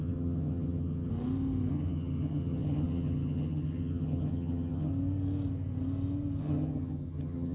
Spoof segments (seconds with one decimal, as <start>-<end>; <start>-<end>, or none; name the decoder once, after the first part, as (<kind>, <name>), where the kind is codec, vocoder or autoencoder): 0.0-1.1 (vocoder, HiFi-GAN); 1.7-4.9; 6.4-7.5